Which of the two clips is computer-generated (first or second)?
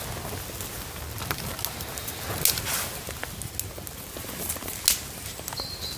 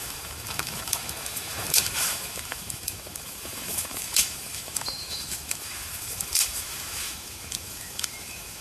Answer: second